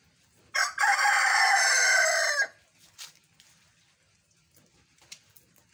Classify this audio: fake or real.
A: real